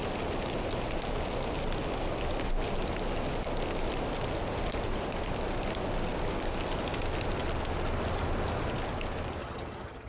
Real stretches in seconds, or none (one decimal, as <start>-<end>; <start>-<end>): 0.0-9.4